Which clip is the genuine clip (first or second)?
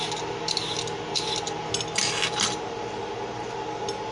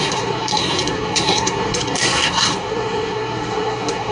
first